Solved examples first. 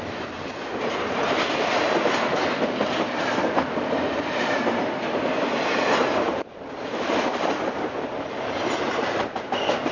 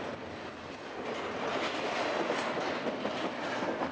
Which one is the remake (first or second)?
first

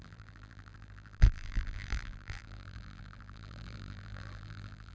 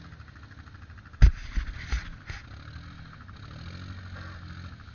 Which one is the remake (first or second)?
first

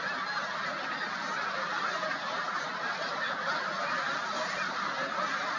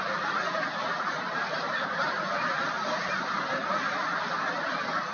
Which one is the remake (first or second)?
second